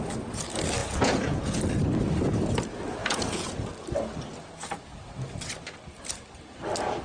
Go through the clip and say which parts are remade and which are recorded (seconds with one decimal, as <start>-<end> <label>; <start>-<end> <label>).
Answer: 0.0-0.8 recorded; 0.8-1.6 remade; 1.6-3.0 recorded; 3.0-3.7 remade; 3.7-7.0 recorded